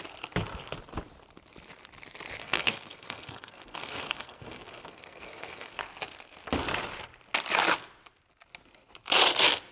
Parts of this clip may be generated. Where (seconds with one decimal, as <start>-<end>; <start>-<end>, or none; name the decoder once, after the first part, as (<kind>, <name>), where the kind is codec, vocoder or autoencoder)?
2.4-5.8 (codec, SNAC)